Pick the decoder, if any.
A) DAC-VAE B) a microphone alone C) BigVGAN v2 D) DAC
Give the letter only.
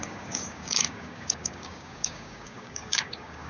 D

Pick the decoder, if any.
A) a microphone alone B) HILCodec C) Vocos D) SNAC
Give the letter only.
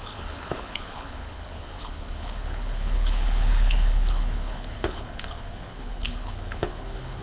B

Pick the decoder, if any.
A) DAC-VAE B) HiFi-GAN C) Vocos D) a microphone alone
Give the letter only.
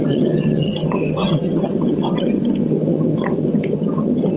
B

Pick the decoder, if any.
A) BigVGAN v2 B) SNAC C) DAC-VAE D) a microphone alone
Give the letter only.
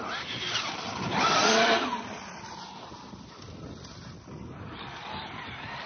D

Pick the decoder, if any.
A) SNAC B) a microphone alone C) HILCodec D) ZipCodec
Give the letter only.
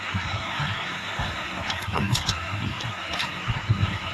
A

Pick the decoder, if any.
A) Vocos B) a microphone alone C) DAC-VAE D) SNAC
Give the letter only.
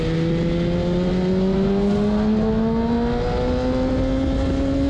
B